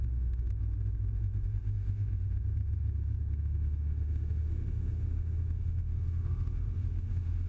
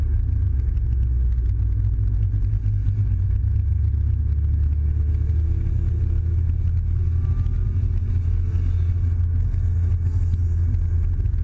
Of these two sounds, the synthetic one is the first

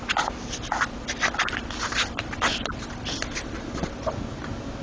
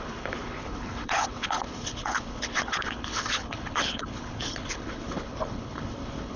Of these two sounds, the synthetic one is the second